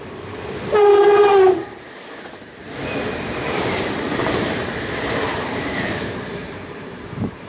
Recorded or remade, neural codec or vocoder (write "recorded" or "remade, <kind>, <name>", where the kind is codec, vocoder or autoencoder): remade, vocoder, BigVGAN v2